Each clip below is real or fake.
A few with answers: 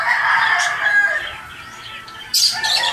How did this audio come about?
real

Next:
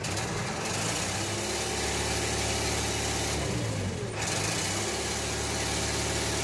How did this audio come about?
real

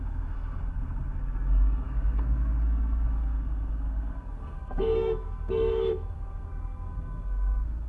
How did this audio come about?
fake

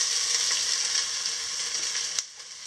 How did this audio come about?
real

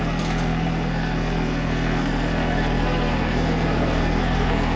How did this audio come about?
fake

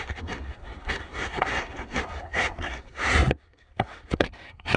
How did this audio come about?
fake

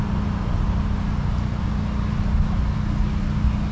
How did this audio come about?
real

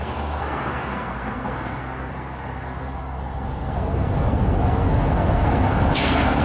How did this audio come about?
fake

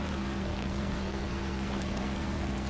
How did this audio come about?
fake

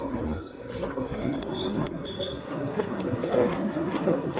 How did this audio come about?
fake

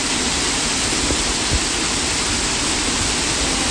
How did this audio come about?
real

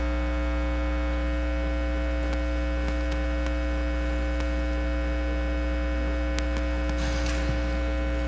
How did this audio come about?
real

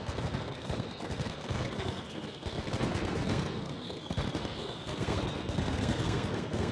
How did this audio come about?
fake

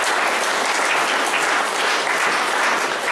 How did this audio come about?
real